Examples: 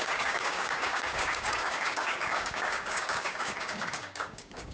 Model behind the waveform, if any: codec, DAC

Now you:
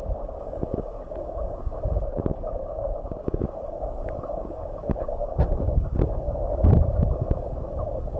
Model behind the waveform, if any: codec, DAC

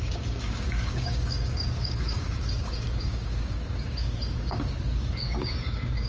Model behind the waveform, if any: codec, DAC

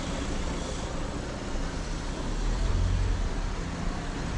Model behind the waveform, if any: none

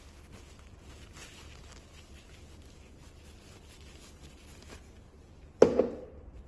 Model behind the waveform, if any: none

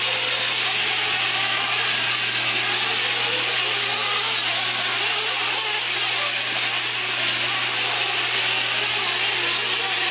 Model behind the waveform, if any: none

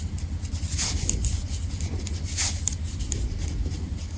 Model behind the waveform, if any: none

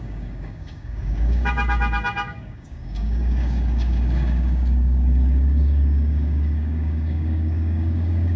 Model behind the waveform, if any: codec, DAC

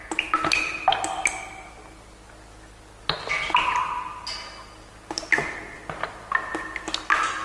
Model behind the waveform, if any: none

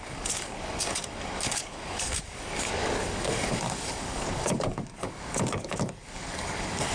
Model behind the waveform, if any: codec, DAC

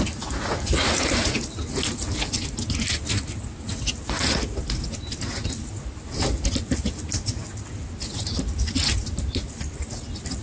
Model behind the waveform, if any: none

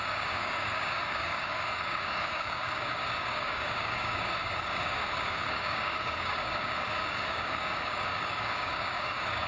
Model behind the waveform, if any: codec, DAC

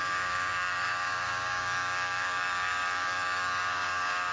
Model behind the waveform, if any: codec, DAC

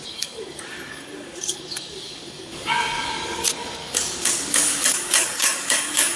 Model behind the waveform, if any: codec, DAC